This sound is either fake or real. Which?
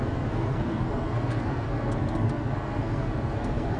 fake